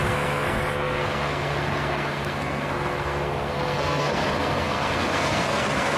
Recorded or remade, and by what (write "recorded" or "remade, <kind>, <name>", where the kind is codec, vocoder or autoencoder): remade, codec, SNAC